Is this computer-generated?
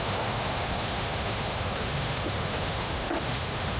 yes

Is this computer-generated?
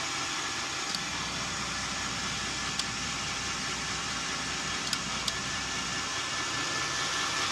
no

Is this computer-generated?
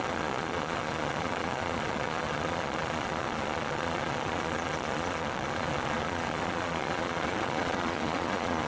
yes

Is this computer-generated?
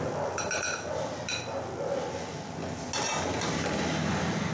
no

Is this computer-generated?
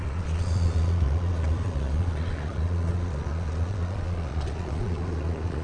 yes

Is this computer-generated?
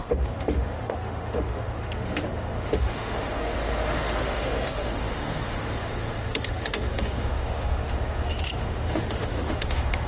yes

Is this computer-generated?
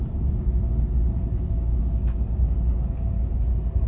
no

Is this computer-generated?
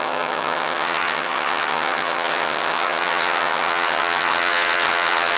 yes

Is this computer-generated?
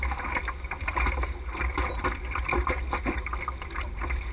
no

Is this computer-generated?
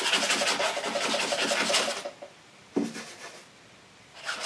no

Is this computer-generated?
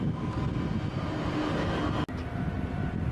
no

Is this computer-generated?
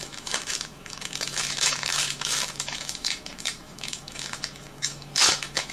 yes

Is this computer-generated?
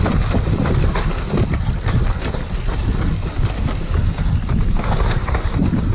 no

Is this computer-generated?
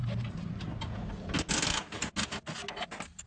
no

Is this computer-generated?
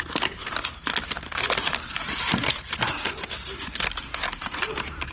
no